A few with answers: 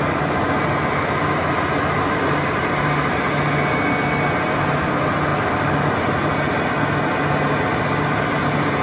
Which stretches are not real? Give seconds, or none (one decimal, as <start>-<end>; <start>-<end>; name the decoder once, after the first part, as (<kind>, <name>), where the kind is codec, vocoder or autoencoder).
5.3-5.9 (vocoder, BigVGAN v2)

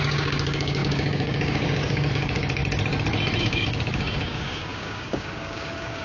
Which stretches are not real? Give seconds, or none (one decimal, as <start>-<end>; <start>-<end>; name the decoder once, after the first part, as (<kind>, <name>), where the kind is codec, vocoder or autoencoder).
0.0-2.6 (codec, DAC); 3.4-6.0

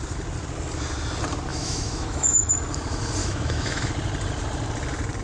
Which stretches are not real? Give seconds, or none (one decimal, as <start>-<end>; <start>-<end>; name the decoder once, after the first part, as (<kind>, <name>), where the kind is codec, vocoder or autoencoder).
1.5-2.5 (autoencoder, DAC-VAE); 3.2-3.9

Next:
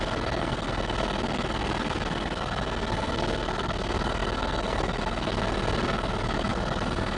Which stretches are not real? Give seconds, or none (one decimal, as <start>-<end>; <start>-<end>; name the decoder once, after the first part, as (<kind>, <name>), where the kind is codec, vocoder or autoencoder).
0.0-7.2 (codec, SNAC)

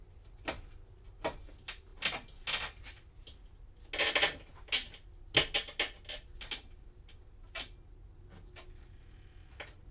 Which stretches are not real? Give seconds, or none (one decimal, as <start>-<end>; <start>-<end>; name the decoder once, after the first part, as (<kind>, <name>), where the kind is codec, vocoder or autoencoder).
none

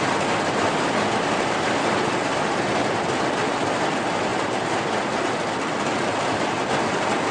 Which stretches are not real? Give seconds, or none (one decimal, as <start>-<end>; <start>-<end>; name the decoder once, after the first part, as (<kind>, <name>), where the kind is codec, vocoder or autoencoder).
none